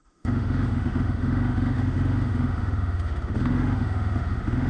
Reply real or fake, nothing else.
fake